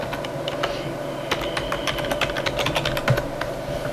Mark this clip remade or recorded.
recorded